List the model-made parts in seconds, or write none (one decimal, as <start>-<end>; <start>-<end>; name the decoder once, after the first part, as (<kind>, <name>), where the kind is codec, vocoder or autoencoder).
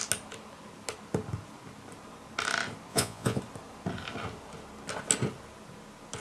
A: 2.9-3.4 (vocoder, Vocos)